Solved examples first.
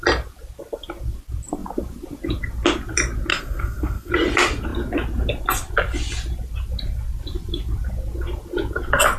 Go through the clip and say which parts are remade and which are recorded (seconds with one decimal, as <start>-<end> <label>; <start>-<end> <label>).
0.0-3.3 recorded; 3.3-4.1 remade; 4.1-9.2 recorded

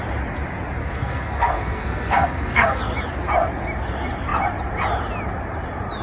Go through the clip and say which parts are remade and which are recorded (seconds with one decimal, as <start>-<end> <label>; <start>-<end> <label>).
0.0-0.8 recorded; 0.8-2.8 remade; 2.8-6.0 recorded

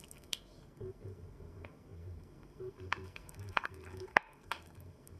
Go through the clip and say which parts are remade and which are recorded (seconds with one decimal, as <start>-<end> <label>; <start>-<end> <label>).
0.0-5.2 remade

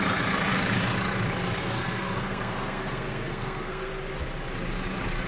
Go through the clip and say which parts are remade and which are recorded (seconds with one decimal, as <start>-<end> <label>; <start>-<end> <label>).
0.0-1.6 recorded; 1.6-3.9 remade; 3.9-5.3 recorded

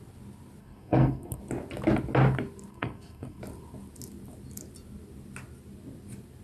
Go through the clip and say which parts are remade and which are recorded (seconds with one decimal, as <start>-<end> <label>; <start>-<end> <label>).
0.0-0.6 recorded; 0.6-1.4 remade; 1.4-2.7 recorded; 2.7-3.4 remade; 3.4-6.4 recorded

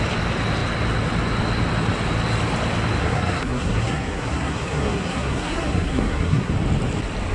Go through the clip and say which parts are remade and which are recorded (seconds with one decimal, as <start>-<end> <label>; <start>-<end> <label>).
0.0-3.0 recorded; 3.0-6.5 remade; 6.5-7.3 recorded